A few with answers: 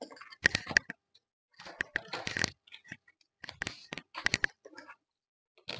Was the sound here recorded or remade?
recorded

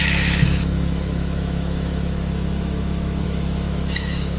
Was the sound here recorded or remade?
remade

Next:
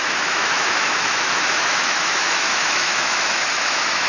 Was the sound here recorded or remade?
remade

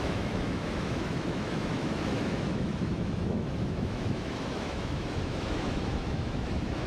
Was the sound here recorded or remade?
remade